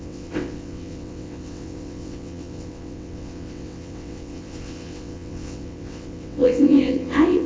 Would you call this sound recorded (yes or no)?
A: no